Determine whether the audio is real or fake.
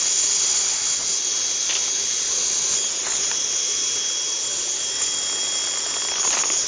real